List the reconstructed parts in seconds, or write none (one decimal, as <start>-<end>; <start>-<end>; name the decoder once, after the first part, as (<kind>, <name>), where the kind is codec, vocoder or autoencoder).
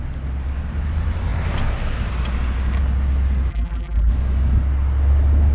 3.5-4.1 (vocoder, BigVGAN v2)